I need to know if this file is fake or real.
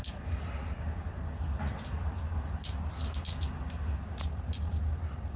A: real